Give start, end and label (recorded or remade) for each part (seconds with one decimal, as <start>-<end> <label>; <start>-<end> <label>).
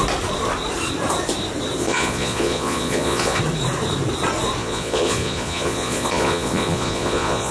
0.0-1.8 recorded; 1.8-3.4 remade; 3.4-4.6 recorded; 4.6-7.5 remade